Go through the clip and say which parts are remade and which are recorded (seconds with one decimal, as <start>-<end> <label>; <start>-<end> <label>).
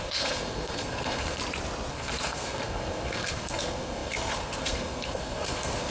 0.0-1.4 remade; 1.4-1.9 recorded; 1.9-5.9 remade